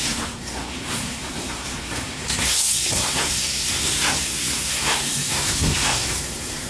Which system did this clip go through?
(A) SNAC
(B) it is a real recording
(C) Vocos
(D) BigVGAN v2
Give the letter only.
A